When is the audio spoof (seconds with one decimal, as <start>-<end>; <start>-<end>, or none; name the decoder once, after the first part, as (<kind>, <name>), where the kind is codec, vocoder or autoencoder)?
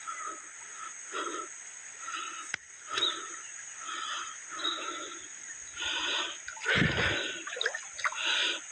1.9-3.2 (vocoder, BigVGAN v2)